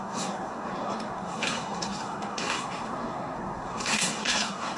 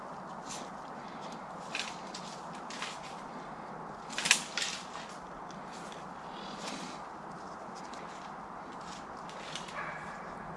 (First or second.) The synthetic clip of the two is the first